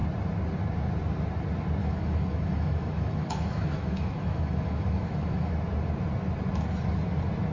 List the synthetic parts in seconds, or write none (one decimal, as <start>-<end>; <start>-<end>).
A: 1.8-5.5